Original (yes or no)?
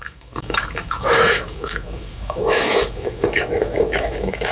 no